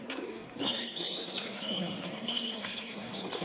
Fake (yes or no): yes